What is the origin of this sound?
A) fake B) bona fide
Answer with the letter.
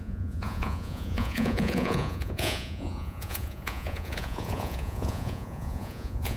A